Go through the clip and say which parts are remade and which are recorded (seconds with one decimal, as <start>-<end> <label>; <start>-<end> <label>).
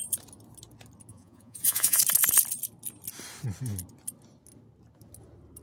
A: 0.0-1.1 recorded; 1.1-2.0 remade; 2.0-5.6 recorded